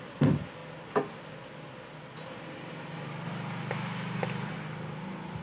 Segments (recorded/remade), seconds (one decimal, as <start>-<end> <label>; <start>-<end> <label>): 0.0-5.4 recorded